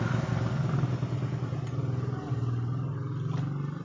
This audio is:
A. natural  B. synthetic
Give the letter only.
A